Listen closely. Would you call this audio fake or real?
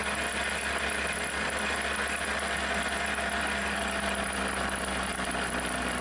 real